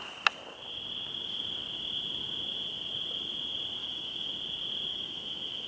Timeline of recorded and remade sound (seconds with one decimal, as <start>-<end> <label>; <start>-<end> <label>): 0.0-3.8 recorded; 3.8-4.3 remade; 4.3-4.9 recorded; 4.9-5.7 remade